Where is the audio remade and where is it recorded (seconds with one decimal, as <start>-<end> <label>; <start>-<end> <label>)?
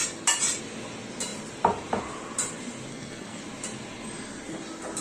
0.0-2.9 recorded; 2.9-3.4 remade; 3.4-5.0 recorded